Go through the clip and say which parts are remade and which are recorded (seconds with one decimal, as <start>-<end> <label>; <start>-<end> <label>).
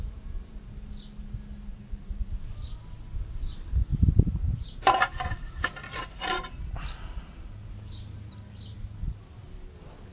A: 0.0-1.7 recorded; 1.7-2.3 remade; 2.3-3.9 recorded; 3.9-6.6 remade; 6.6-10.1 recorded